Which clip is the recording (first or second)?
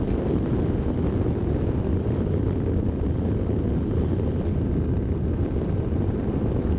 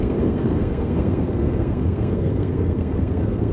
first